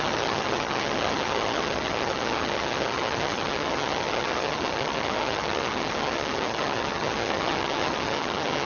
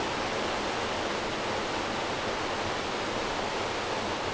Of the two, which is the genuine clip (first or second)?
second